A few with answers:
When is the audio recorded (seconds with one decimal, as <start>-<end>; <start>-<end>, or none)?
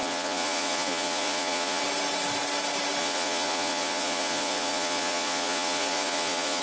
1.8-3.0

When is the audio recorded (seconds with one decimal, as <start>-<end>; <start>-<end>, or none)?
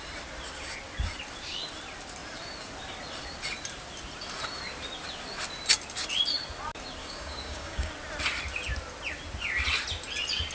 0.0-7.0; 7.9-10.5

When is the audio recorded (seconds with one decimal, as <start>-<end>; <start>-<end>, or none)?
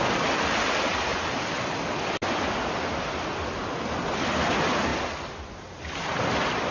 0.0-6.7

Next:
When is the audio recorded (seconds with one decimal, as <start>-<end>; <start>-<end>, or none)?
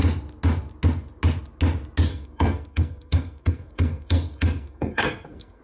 0.0-2.1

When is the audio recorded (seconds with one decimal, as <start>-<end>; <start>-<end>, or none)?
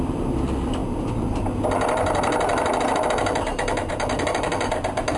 0.0-5.2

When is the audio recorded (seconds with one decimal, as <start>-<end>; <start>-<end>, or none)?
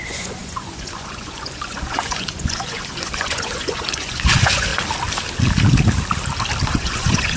4.7-6.7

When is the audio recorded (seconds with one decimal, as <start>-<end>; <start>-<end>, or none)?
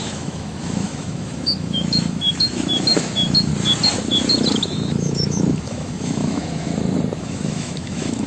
3.5-4.5; 6.7-7.2